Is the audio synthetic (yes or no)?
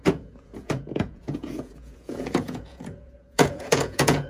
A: yes